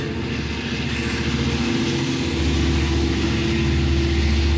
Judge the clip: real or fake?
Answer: real